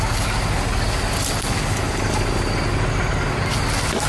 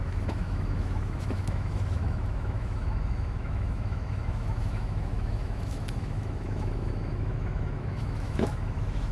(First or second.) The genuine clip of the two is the first